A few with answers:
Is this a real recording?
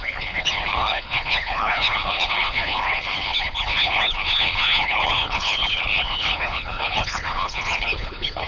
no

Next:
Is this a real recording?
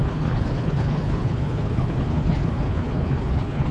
no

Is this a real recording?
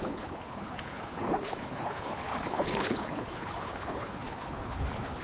no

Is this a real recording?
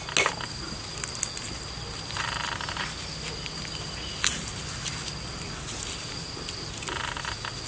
yes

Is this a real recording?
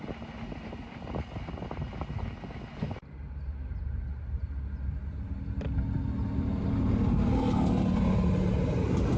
yes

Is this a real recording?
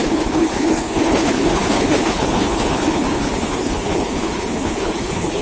no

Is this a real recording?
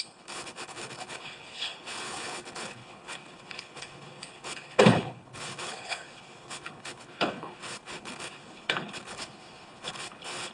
no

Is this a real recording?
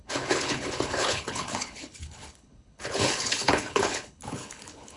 no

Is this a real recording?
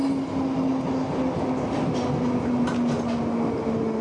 yes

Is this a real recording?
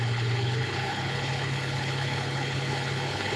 no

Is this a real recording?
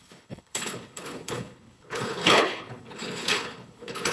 no